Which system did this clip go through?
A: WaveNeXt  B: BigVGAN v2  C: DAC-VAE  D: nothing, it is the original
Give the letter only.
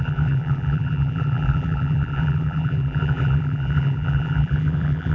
B